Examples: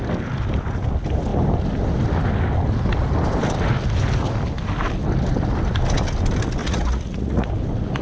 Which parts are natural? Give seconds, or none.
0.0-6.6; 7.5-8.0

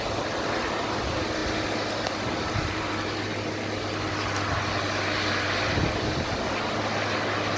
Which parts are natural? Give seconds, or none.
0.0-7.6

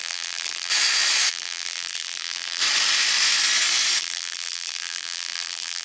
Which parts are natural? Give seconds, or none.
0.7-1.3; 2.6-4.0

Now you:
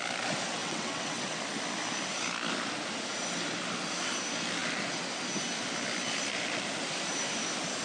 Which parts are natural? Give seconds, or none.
0.0-0.6; 1.4-7.8

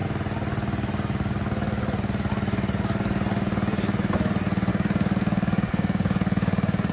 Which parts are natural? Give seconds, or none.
0.0-4.7

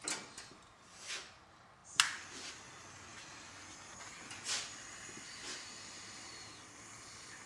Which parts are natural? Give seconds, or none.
0.0-7.5

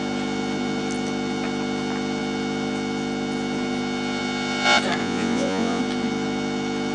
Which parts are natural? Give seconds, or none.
0.0-5.0; 5.8-6.9

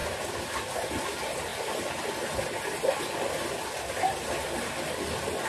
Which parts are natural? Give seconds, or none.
0.0-5.5